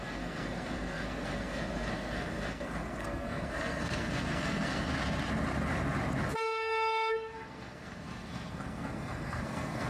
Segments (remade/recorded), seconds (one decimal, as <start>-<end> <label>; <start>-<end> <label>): 0.0-4.9 remade; 4.9-6.3 recorded; 6.3-9.9 remade